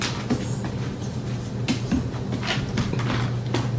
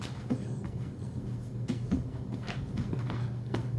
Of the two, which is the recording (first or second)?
first